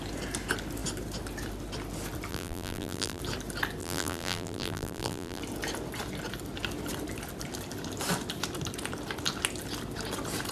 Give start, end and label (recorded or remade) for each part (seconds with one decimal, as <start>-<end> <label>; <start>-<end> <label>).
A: 0.0-2.3 recorded; 2.3-3.2 remade; 3.2-3.8 recorded; 3.8-5.4 remade; 5.4-10.5 recorded

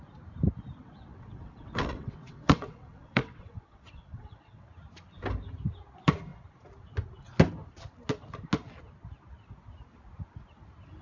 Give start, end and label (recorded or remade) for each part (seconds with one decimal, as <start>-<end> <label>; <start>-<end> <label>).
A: 0.0-0.8 recorded; 0.8-4.7 remade; 4.7-11.0 recorded

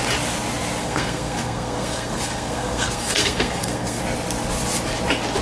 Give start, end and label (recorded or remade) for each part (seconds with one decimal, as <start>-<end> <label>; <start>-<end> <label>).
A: 0.0-0.8 recorded; 0.8-4.0 remade; 4.0-5.4 recorded

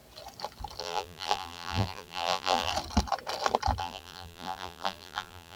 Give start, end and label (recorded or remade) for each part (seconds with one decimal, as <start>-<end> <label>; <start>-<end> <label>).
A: 0.0-0.8 recorded; 0.8-2.7 remade; 2.7-3.8 recorded; 3.8-5.6 remade

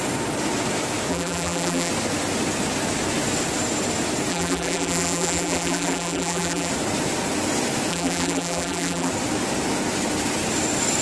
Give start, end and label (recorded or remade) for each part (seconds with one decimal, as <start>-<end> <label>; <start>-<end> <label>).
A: 0.0-1.1 recorded; 1.1-1.9 remade; 1.9-4.3 recorded; 4.3-6.7 remade; 6.7-7.9 recorded; 7.9-9.1 remade; 9.1-11.0 recorded

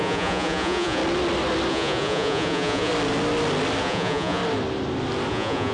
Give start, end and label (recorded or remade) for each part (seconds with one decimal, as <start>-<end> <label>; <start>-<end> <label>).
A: 0.0-1.0 remade; 1.0-1.7 recorded; 1.7-2.9 remade; 2.9-3.8 recorded; 3.8-4.4 remade; 4.4-5.3 recorded; 5.3-5.7 remade

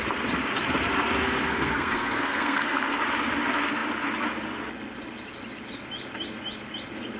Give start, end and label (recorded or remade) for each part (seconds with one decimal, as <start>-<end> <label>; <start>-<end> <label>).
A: 0.0-1.2 recorded; 1.2-3.0 remade; 3.0-7.2 recorded